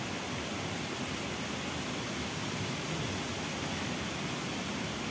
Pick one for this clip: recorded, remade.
recorded